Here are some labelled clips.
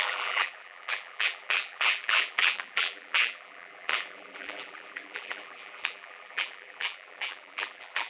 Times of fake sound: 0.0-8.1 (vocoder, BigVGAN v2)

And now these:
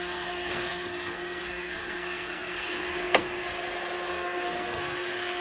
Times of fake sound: 0.0-3.5 (codec, SNAC); 4.1-5.4

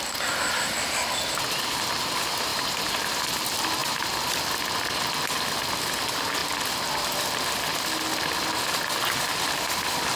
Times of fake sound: 2.5-3.2 (vocoder, BigVGAN v2); 3.8-4.4

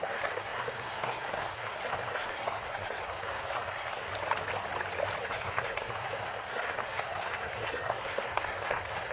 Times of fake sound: 0.0-4.1 (codec, SNAC); 5.2-9.1

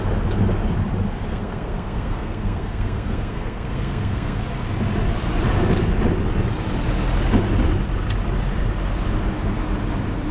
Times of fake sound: 1.3-4.4 (codec, SNAC)